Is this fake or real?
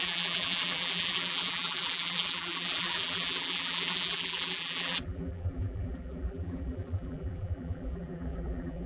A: fake